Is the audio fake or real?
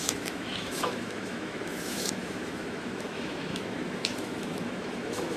fake